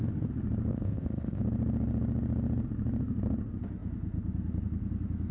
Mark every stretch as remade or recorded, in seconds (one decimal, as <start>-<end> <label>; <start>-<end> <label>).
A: 0.0-0.7 recorded; 0.7-1.4 remade; 1.4-5.3 recorded